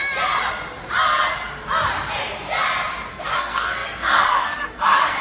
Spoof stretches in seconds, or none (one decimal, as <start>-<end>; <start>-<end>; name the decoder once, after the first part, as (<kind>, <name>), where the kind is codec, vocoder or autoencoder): 3.1-5.2 (codec, SNAC)

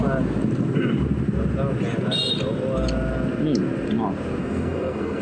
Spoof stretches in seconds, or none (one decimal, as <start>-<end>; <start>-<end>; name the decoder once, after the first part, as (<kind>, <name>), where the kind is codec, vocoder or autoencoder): 4.4-5.2 (codec, SNAC)

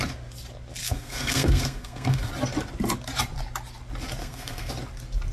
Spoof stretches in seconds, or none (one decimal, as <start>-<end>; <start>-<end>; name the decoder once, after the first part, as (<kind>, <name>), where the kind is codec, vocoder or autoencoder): 0.8-2.3 (codec, SNAC); 4.2-4.7

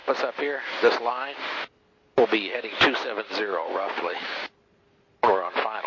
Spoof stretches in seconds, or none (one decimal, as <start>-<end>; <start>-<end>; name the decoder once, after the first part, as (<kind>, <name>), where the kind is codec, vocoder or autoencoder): none

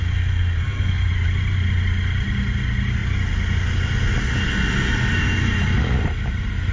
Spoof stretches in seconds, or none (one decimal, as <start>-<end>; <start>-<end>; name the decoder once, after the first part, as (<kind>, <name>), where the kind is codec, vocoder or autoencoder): 0.0-1.1 (codec, SNAC)

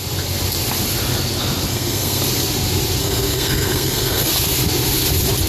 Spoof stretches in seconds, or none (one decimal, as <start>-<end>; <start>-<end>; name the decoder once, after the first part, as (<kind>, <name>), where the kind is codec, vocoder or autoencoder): 1.7-2.2 (codec, SNAC); 3.0-4.3